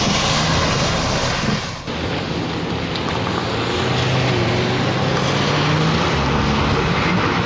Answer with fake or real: real